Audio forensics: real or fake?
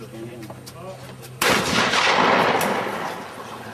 real